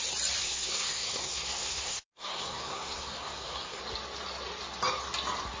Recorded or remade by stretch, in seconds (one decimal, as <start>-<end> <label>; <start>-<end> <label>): 0.0-0.4 recorded; 0.4-3.8 remade; 3.8-5.6 recorded